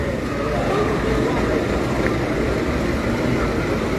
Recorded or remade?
recorded